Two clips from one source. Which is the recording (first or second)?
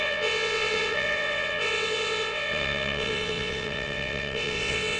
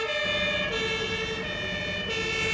second